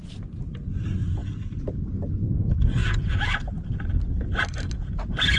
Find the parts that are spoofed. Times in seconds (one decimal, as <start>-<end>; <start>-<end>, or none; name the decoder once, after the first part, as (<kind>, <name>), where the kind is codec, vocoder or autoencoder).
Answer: 1.2-1.7 (vocoder, Vocos); 2.8-3.5

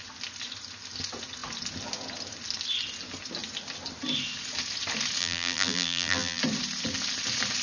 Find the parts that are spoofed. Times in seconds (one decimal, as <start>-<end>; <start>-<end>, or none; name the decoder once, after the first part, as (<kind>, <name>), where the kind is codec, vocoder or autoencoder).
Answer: 5.2-6.4 (vocoder, BigVGAN v2)